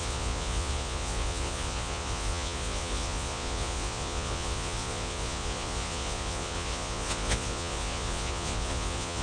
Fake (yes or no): yes